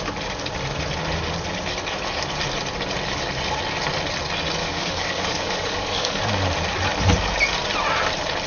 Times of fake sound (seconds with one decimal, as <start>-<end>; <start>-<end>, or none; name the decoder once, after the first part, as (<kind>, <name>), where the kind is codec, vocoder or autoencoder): 4.6-6.2 (codec, DAC)